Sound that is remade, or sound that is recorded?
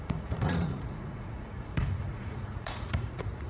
remade